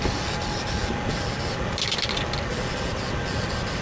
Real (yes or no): yes